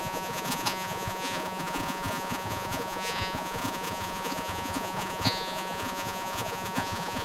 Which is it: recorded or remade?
remade